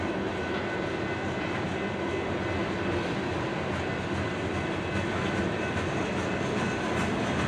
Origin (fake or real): real